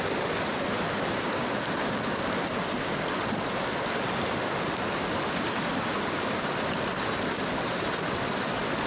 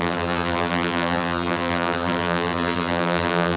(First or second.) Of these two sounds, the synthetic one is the second